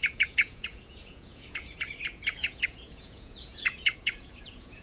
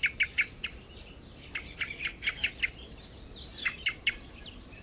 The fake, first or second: first